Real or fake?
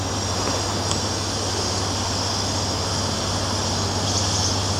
real